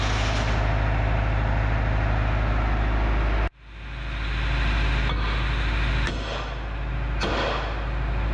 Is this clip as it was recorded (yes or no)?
yes